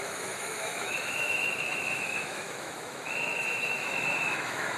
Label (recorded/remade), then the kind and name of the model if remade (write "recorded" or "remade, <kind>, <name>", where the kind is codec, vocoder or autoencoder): remade, autoencoder, DAC-VAE